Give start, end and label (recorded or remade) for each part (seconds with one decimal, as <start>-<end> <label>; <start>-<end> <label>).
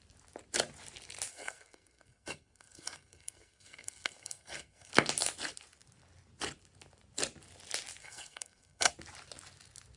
0.0-1.3 recorded; 1.3-4.9 remade; 4.9-8.0 recorded; 8.0-8.9 remade; 8.9-10.0 recorded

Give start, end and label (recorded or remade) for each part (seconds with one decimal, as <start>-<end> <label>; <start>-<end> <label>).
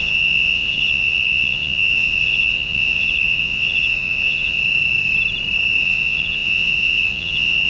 0.0-4.6 remade; 4.6-5.8 recorded; 5.8-7.7 remade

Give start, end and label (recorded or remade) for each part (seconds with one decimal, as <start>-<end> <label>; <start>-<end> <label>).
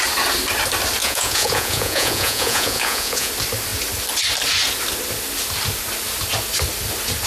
0.0-1.0 recorded; 1.0-3.3 remade; 3.3-7.3 recorded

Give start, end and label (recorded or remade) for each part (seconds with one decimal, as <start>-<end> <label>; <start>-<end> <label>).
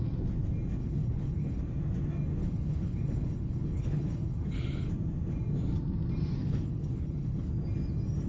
0.0-0.8 recorded; 0.8-1.6 remade; 1.6-2.4 recorded; 2.4-4.9 remade; 4.9-6.4 recorded; 6.4-7.5 remade; 7.5-8.3 recorded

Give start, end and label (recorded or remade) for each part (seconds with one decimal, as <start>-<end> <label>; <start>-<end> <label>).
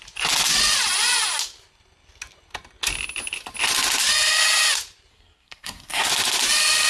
0.0-5.1 recorded; 5.1-6.1 remade; 6.1-6.9 recorded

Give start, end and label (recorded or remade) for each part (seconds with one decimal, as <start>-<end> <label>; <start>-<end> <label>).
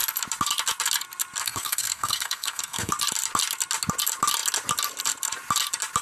0.0-1.4 recorded; 1.4-2.9 remade; 2.9-6.0 recorded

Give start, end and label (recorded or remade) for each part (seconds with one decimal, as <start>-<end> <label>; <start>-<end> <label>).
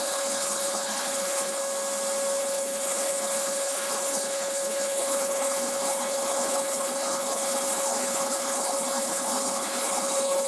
0.0-1.6 remade; 1.6-2.4 recorded; 2.4-10.5 remade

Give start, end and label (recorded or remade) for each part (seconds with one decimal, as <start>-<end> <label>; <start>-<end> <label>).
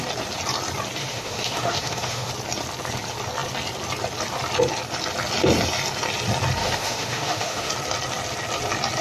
0.0-1.0 recorded; 1.0-2.3 remade; 2.3-6.6 recorded; 6.6-7.7 remade; 7.7-9.0 recorded